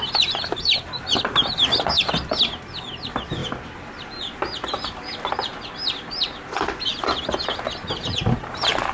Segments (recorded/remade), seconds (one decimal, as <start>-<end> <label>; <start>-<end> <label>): 0.0-2.2 remade; 2.2-3.0 recorded; 3.0-3.4 remade; 3.4-4.9 recorded; 4.9-6.9 remade; 6.9-7.6 recorded; 7.6-8.9 remade